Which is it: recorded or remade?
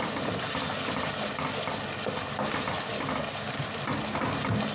recorded